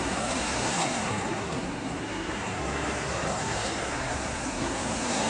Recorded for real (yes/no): no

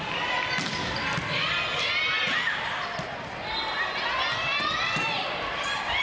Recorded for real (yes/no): yes